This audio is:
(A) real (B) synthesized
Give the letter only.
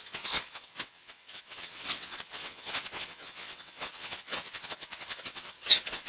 B